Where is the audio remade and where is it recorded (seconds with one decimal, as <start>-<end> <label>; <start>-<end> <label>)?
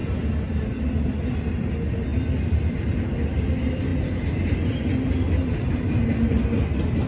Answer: 0.0-7.1 recorded